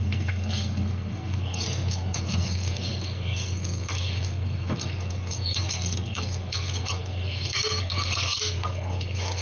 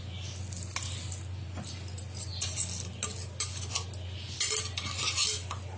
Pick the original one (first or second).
second